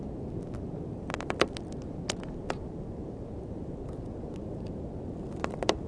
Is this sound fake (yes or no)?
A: no